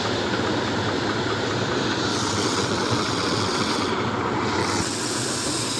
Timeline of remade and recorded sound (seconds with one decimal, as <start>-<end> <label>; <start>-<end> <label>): 0.0-2.1 recorded; 2.1-3.9 remade; 3.9-4.6 recorded; 4.6-5.1 remade; 5.1-5.8 recorded